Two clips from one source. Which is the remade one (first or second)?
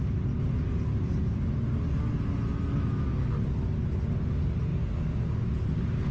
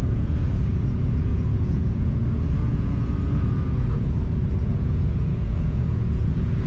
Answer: second